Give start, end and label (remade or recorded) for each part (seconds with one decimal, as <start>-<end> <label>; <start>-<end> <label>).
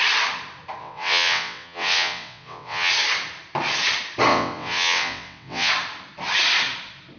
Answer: 0.0-0.8 recorded; 0.8-2.9 remade; 2.9-4.3 recorded; 4.3-5.7 remade; 5.7-7.2 recorded